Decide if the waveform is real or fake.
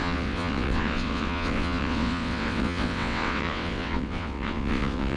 fake